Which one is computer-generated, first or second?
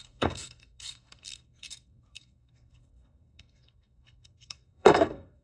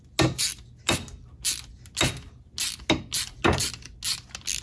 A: first